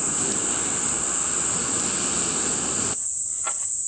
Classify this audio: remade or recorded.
recorded